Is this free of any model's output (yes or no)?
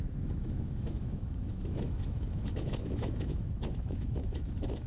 no